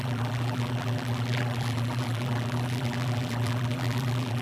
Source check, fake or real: fake